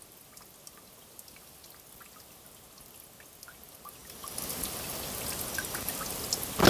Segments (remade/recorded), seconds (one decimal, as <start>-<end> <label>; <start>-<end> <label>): 0.0-6.7 recorded